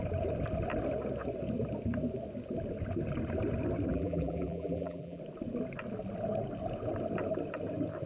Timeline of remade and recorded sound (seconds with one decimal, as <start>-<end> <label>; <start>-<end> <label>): 0.0-3.9 recorded; 3.9-5.2 remade; 5.2-8.1 recorded